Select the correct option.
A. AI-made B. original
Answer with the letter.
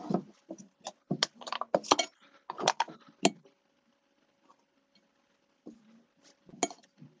B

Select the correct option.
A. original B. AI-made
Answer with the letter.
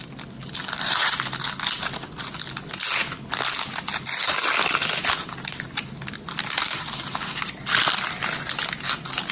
A